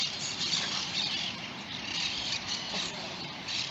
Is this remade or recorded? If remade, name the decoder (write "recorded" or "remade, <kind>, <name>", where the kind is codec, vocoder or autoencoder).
remade, vocoder, BigVGAN v2